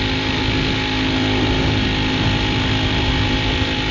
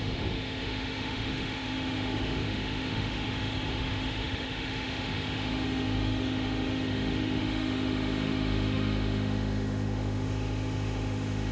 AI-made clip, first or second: second